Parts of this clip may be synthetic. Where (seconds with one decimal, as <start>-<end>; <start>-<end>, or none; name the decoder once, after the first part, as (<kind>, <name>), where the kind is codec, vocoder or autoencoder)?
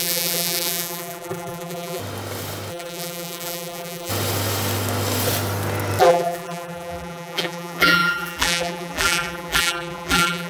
0.0-2.0 (vocoder, BigVGAN v2); 2.7-4.1; 6.0-10.5